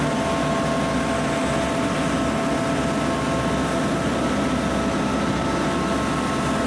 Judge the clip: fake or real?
real